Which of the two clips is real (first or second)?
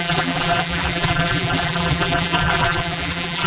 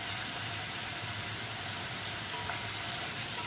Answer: second